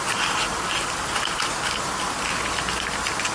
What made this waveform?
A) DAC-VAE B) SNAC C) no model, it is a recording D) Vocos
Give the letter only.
C